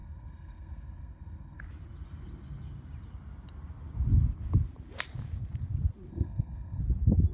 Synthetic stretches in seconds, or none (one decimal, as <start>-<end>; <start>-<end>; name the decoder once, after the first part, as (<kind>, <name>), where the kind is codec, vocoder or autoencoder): 0.0-1.6 (codec, SNAC); 6.1-6.8